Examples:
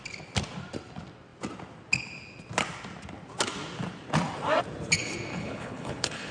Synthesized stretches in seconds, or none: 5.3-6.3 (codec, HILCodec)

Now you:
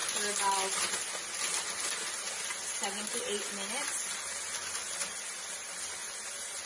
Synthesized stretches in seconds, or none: none

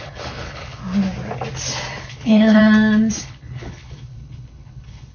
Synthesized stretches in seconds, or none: 0.0-0.8 (codec, HILCodec); 2.0-2.6; 3.2-5.1

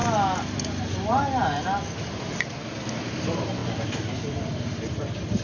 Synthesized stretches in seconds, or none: none